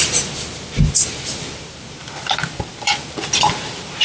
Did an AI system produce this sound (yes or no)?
no